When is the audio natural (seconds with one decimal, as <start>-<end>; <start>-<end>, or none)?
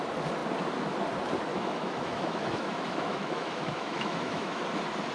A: 0.0-1.5; 4.6-5.1